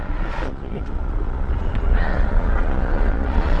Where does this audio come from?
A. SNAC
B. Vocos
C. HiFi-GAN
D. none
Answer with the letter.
B